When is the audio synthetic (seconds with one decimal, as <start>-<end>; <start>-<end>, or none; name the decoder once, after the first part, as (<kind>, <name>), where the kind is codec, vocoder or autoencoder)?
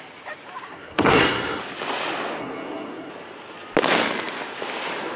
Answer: 0.7-1.6 (codec, SNAC); 2.4-3.1